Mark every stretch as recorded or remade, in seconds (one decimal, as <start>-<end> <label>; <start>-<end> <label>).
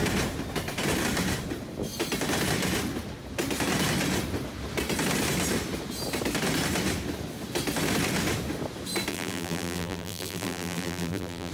0.0-9.1 recorded; 9.1-11.5 remade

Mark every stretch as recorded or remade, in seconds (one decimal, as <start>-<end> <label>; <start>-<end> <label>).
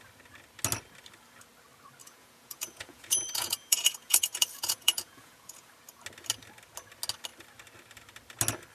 0.0-2.0 recorded; 2.0-5.7 remade; 5.7-8.7 recorded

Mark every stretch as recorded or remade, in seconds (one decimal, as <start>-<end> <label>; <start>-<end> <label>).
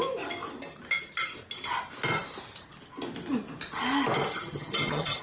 0.0-4.3 recorded; 4.3-5.2 remade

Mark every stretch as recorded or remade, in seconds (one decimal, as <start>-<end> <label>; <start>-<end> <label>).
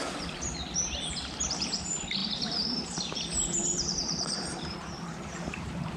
0.0-2.2 recorded; 2.2-6.0 remade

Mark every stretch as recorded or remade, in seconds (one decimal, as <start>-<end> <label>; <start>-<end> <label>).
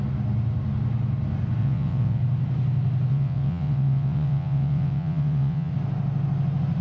0.0-1.6 recorded; 1.6-2.2 remade; 2.2-3.1 recorded; 3.1-5.7 remade; 5.7-6.8 recorded